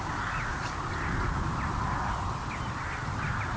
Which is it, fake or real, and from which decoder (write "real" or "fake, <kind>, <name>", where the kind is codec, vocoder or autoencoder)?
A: real